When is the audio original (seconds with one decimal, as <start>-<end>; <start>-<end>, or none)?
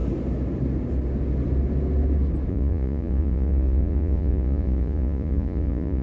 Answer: 0.0-2.5